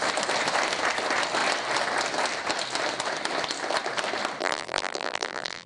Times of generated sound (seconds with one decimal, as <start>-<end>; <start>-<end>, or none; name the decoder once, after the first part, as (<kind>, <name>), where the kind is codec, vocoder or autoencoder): 4.4-5.7 (vocoder, BigVGAN v2)